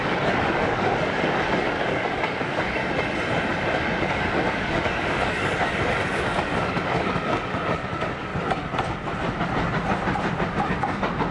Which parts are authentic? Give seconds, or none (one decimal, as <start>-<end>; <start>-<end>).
2.8-4.0; 8.3-10.7